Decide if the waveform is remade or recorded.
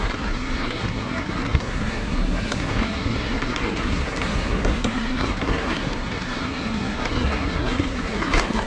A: remade